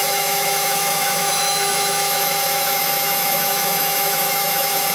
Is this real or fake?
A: fake